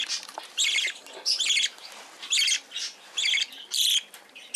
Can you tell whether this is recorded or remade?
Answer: recorded